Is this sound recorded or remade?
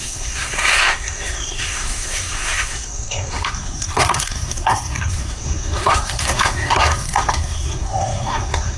remade